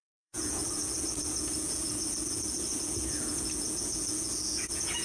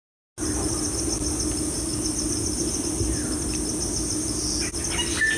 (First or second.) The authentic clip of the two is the second